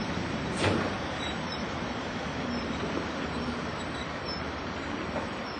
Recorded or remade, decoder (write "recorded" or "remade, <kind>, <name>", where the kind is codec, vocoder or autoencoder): remade, vocoder, BigVGAN v2